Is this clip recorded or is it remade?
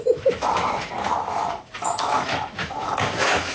remade